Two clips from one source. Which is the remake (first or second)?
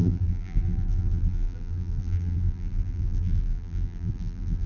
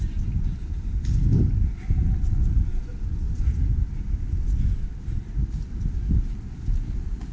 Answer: first